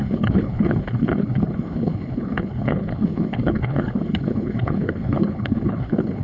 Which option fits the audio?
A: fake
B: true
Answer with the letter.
A